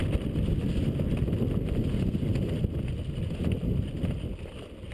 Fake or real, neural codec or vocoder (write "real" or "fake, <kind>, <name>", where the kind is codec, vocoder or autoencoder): real